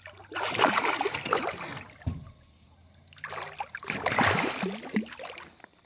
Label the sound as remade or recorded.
recorded